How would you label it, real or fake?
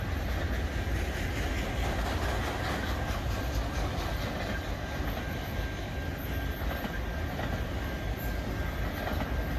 real